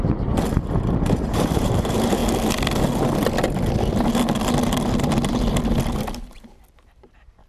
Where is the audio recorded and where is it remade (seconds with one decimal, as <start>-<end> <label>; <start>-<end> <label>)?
0.0-2.2 remade; 2.2-6.7 recorded; 6.7-7.5 remade